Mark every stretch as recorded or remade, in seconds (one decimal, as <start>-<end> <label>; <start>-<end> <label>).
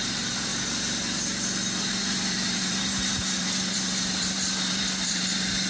0.0-0.5 remade; 0.5-1.8 recorded; 1.8-5.7 remade